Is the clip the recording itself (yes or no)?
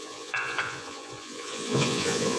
no